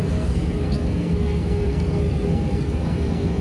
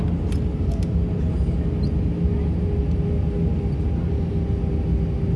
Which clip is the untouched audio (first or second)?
second